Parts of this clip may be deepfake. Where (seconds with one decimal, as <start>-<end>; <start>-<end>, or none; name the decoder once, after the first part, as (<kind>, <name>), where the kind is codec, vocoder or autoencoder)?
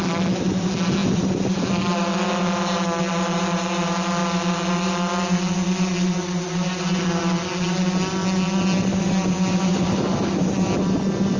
none